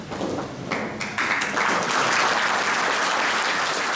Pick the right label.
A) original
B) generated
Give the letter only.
A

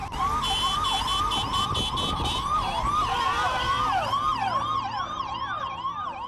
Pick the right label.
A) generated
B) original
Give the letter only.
B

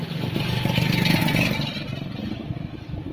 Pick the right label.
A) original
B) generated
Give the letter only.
A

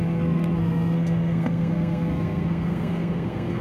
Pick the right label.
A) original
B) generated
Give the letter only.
B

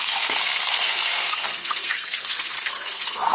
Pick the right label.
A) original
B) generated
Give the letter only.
B